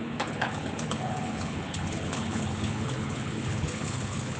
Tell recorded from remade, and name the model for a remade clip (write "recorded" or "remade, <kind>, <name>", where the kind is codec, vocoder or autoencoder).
remade, codec, HILCodec